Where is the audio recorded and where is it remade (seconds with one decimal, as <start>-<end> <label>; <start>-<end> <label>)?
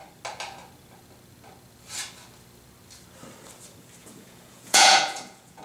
0.0-4.0 recorded; 4.0-5.6 remade